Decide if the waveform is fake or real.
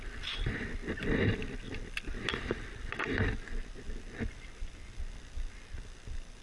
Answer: real